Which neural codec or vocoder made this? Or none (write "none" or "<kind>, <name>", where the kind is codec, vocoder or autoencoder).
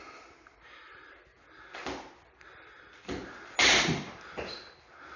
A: none